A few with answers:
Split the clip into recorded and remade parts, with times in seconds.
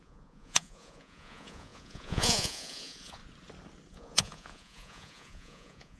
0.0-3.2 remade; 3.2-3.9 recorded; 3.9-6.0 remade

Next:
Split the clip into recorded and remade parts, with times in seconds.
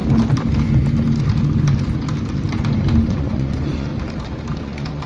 0.0-3.1 recorded; 3.1-3.9 remade; 3.9-4.6 recorded; 4.6-5.1 remade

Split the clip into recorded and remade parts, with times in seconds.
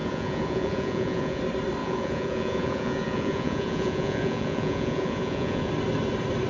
0.0-1.4 remade; 1.4-1.8 recorded; 1.8-5.7 remade; 5.7-6.5 recorded